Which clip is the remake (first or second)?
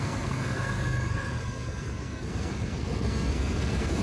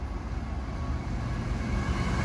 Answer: first